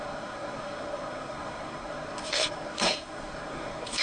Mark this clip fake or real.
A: fake